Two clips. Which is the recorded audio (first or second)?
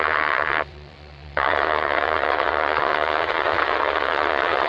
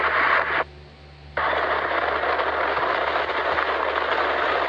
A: second